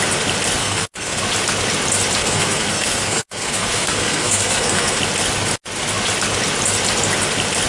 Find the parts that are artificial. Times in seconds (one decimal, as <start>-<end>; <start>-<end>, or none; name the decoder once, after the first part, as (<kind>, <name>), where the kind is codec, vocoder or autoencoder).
0.6-1.2 (codec, SNAC); 2.2-5.0